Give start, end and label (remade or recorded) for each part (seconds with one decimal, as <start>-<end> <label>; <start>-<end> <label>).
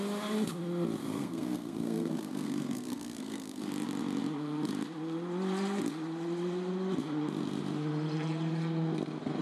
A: 0.0-1.0 recorded; 1.0-3.7 remade; 3.7-9.4 recorded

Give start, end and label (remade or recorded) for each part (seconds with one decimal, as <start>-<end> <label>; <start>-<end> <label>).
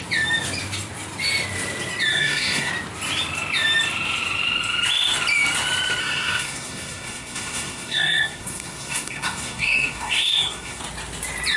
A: 0.0-2.1 recorded; 2.1-2.7 remade; 2.7-6.0 recorded; 6.0-10.8 remade; 10.8-11.6 recorded